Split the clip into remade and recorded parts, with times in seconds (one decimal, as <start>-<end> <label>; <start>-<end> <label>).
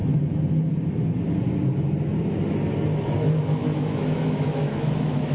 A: 0.0-3.2 recorded; 3.2-5.3 remade